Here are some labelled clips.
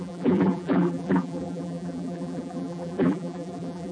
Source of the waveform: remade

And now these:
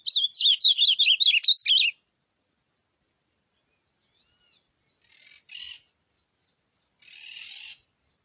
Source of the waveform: recorded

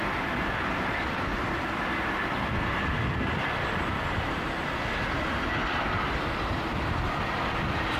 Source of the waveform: recorded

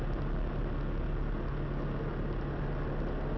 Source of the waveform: recorded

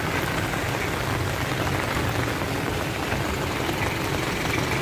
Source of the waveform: recorded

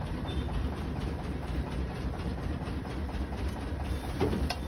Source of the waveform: remade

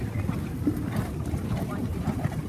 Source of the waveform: remade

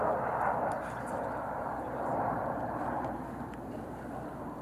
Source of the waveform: remade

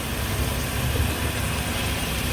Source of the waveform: recorded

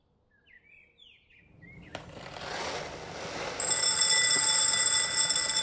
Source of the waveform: recorded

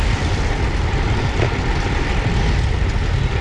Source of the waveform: recorded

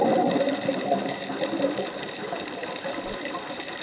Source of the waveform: remade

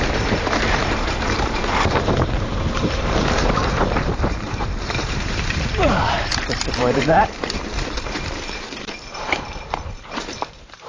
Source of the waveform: remade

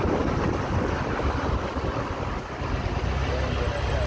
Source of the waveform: recorded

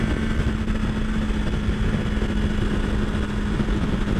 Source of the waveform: recorded